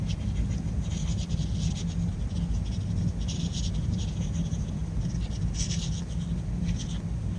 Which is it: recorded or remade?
recorded